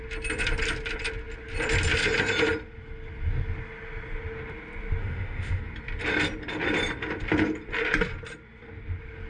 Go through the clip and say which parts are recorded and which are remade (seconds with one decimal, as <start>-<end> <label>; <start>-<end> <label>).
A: 0.0-5.0 recorded; 5.0-5.6 remade; 5.6-9.3 recorded